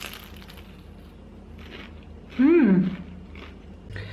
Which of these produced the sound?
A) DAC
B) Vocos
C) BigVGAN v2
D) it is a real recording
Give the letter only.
D